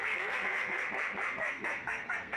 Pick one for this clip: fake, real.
fake